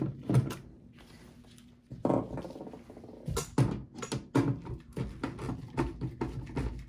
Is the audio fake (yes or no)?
no